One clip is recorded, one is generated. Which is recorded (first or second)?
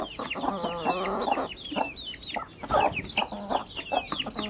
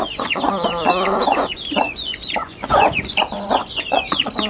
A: first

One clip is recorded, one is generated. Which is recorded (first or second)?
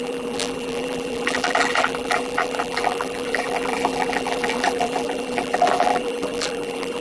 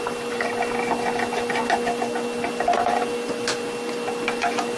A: second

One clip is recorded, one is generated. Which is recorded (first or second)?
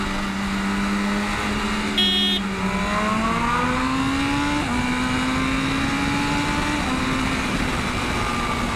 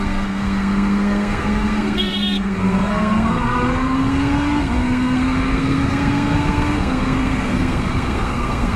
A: first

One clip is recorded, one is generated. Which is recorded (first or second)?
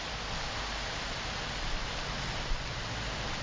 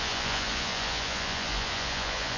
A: first